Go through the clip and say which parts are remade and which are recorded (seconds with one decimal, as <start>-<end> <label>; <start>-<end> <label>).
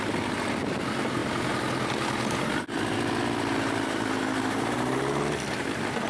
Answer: 0.0-6.1 recorded